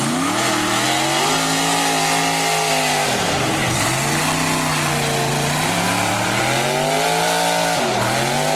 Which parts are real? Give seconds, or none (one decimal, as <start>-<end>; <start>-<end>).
0.0-5.3; 6.4-8.6